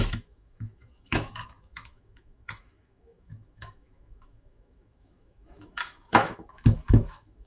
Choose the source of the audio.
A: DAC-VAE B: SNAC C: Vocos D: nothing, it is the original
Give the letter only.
A